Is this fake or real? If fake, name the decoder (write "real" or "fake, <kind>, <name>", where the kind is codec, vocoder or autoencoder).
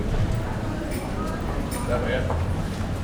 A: fake, vocoder, BigVGAN v2